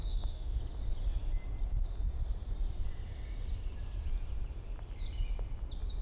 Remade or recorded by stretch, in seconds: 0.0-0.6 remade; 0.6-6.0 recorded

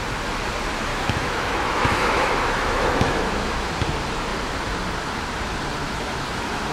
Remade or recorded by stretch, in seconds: 0.0-0.9 recorded; 0.9-3.7 remade; 3.7-5.8 recorded; 5.8-6.7 remade

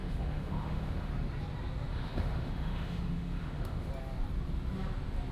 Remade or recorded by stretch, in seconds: 0.0-1.1 remade; 1.1-1.9 recorded; 1.9-3.9 remade; 3.9-5.3 recorded